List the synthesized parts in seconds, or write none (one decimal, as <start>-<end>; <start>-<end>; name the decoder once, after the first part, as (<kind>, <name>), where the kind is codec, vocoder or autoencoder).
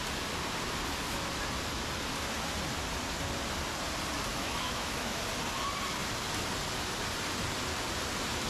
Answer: 4.3-5.2 (autoencoder, DAC-VAE)